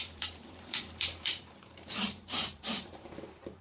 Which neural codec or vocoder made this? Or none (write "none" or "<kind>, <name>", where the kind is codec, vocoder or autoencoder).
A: vocoder, BigVGAN v2